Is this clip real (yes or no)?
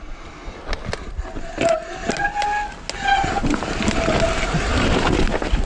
yes